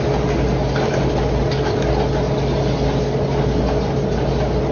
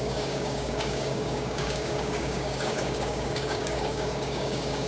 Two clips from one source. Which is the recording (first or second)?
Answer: first